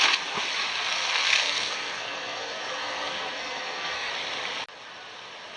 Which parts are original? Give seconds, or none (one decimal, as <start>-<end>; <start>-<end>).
0.0-0.7; 4.1-5.6